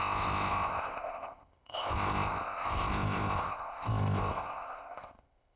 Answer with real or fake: fake